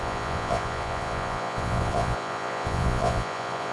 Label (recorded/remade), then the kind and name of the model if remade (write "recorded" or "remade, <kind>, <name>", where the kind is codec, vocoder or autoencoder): remade, vocoder, Vocos